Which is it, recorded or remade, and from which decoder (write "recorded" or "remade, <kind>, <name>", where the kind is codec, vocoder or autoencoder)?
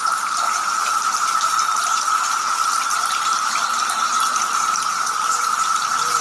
remade, vocoder, BigVGAN v2